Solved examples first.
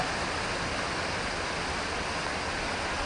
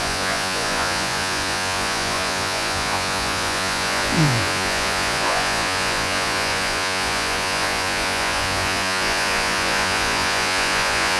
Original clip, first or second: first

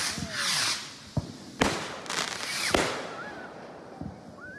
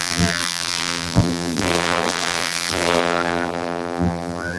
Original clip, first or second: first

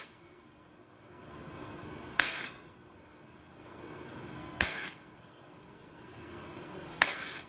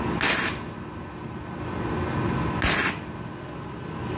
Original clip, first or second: second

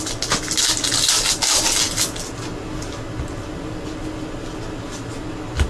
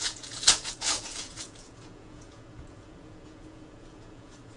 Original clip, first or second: first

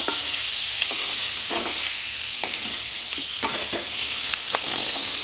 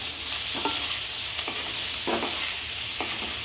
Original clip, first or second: second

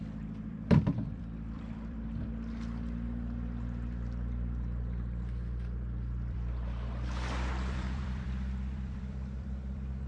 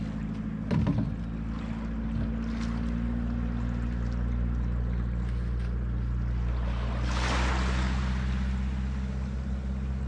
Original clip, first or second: second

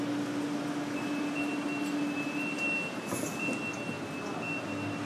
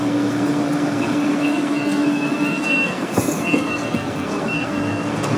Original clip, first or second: first